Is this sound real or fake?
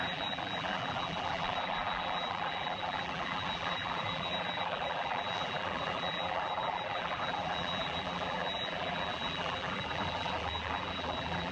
fake